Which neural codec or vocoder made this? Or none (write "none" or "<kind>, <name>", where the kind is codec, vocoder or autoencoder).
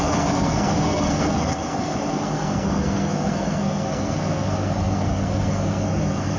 codec, SNAC